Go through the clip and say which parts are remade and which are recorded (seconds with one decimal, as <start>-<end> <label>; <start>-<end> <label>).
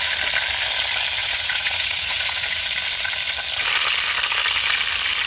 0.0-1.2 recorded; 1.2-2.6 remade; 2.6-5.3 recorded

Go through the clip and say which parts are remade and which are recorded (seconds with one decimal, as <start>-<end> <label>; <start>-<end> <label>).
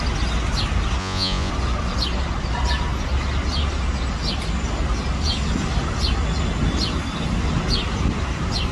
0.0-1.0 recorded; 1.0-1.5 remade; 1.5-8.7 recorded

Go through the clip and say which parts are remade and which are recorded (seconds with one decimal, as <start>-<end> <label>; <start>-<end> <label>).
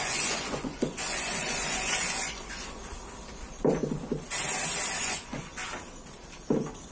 0.0-2.8 remade; 2.8-5.0 recorded; 5.0-5.6 remade; 5.6-6.9 recorded